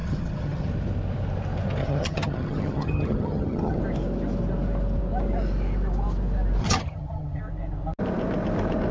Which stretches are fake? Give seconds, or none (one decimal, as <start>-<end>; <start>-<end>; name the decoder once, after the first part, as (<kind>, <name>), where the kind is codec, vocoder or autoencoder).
0.0-0.7 (vocoder, HiFi-GAN); 1.8-3.8; 6.6-7.4